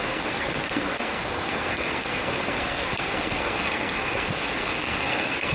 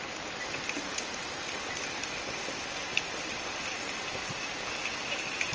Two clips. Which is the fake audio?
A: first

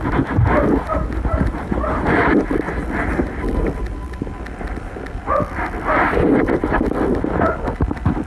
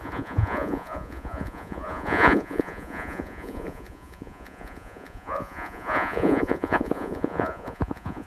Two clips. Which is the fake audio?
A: second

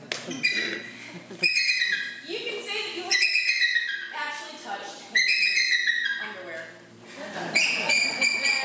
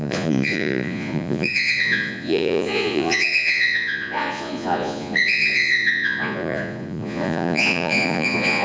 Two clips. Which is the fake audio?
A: second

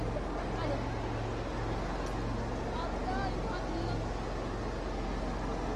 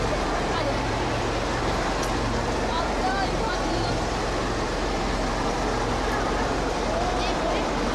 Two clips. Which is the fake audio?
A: second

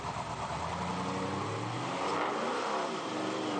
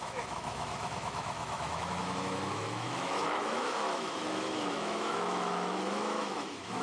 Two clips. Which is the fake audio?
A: second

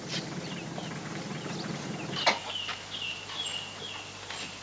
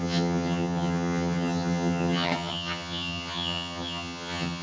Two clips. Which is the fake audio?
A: second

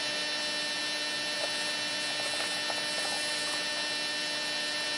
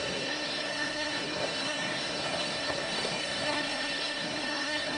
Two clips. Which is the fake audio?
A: second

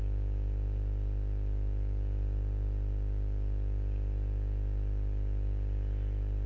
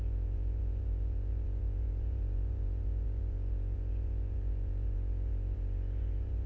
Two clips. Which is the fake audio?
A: second